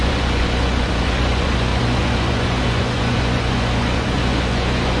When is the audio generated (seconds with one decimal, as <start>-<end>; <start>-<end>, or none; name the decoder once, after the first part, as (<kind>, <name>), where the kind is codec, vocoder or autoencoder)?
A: 0.0-5.0 (vocoder, Vocos)